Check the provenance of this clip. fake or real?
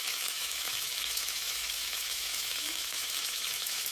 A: fake